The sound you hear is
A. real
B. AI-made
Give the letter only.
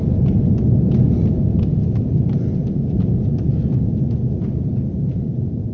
A